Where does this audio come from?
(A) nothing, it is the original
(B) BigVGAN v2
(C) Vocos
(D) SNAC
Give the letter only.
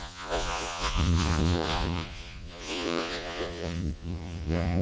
C